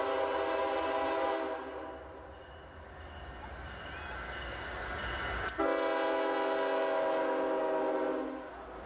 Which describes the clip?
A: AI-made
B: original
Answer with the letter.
B